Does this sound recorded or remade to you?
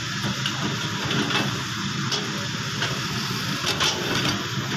recorded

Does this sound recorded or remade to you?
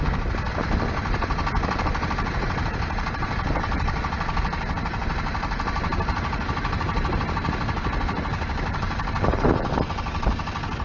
recorded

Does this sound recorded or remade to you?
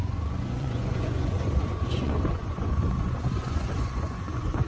remade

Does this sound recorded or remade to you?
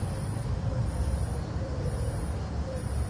recorded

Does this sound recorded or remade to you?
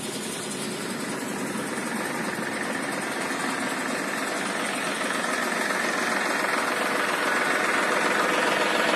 recorded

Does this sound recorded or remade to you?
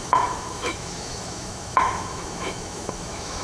remade